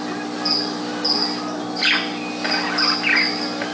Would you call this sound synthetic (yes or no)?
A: no